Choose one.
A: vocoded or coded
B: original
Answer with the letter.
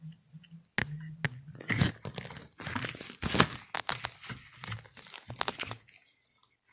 B